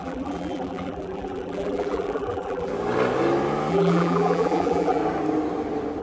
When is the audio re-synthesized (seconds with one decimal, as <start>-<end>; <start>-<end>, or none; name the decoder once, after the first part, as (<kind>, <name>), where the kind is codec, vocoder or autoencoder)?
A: 0.0-2.7 (vocoder, BigVGAN v2); 3.7-5.0